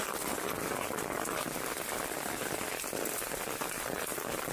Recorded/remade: remade